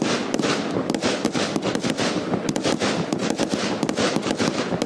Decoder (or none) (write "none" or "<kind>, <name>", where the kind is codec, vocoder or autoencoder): none